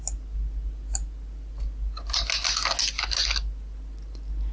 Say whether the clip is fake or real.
real